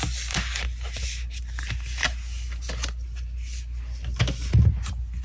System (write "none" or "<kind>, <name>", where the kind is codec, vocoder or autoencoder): none